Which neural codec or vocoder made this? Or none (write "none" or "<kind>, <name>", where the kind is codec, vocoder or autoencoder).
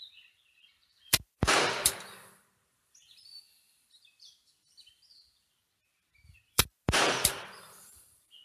vocoder, BigVGAN v2